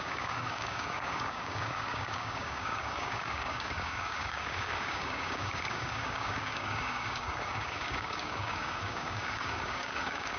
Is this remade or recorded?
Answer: remade